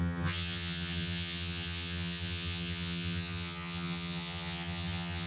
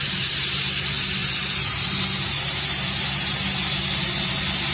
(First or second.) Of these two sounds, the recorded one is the second